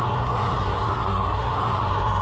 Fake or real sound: fake